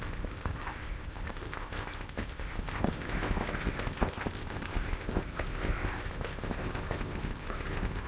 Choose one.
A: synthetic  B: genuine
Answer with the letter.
A